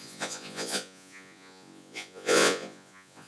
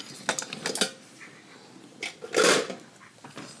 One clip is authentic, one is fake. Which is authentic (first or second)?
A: second